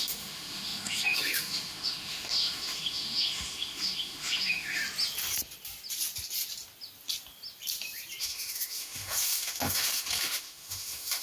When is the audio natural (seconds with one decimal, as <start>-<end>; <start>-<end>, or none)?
4.8-8.2